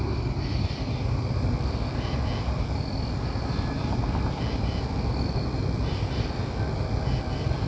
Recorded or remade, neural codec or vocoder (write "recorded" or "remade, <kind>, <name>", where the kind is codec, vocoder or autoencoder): recorded